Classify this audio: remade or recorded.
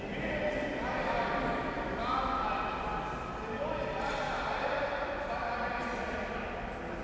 recorded